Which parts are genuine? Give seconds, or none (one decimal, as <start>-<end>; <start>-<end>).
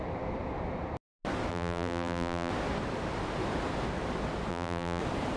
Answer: 0.0-1.5; 2.5-4.5; 5.0-5.4